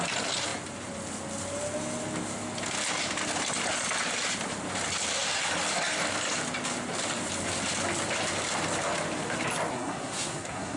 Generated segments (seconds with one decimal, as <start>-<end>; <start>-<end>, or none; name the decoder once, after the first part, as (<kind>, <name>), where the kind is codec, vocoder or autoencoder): 9.7-10.8 (codec, SNAC)